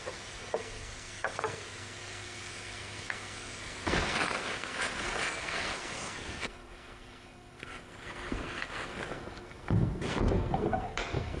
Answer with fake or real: fake